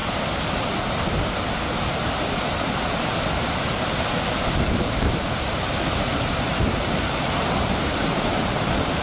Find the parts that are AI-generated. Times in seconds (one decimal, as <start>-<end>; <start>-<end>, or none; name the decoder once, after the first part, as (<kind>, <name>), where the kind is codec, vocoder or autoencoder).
3.3-9.0 (vocoder, BigVGAN v2)